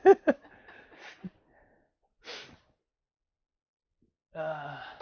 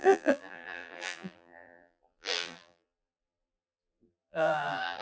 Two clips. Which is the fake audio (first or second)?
second